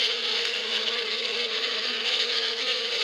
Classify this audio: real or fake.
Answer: fake